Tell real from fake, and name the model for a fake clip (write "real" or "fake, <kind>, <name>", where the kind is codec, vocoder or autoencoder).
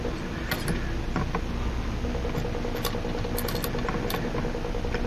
real